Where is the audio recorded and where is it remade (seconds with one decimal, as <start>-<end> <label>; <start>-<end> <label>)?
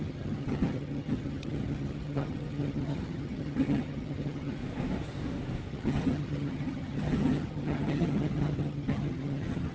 0.0-4.6 remade; 4.6-5.7 recorded; 5.7-9.7 remade